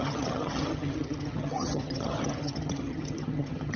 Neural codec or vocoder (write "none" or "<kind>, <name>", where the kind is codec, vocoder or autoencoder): vocoder, HiFi-GAN